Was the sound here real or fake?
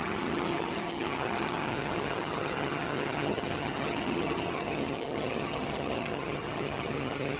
fake